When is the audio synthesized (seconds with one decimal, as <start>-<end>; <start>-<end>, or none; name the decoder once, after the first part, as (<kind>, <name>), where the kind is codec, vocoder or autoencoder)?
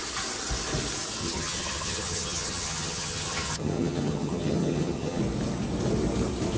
1.2-5.2 (vocoder, HiFi-GAN)